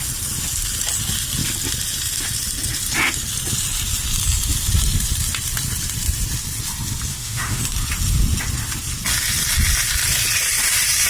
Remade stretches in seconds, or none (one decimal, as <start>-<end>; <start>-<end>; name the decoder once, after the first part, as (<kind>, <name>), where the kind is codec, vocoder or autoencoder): 7.1-7.6 (autoencoder, DAC-VAE)